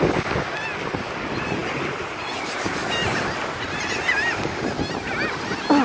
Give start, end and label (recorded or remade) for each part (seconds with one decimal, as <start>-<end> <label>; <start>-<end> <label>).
0.0-5.8 recorded